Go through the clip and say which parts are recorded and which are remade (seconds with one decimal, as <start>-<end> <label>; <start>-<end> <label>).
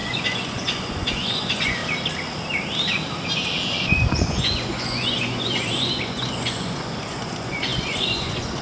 0.0-1.8 remade; 1.8-3.8 recorded; 3.8-8.6 remade